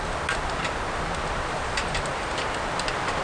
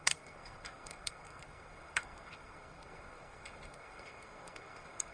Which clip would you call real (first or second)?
first